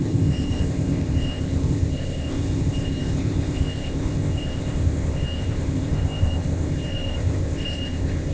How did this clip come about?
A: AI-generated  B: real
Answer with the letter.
A